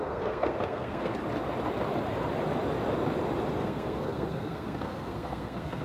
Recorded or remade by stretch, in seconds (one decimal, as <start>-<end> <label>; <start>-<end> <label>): 0.0-1.1 remade; 1.1-3.6 recorded; 3.6-5.8 remade